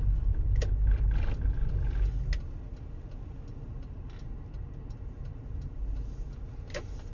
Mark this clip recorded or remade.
recorded